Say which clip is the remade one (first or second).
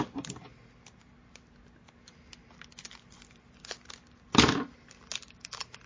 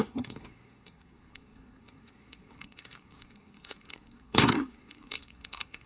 second